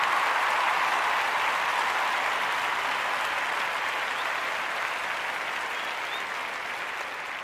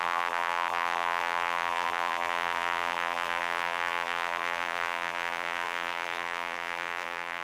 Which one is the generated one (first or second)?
second